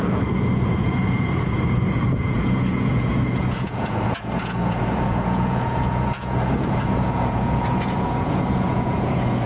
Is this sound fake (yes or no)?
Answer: yes